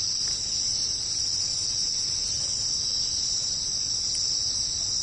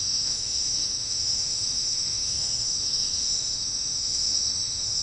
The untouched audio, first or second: first